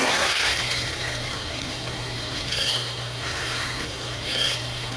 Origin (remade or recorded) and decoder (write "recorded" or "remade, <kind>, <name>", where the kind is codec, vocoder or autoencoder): remade, codec, SNAC